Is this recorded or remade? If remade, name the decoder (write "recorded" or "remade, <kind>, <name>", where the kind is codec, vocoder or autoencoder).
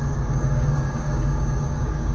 remade, codec, DAC